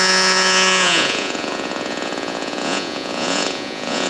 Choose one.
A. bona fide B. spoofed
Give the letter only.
B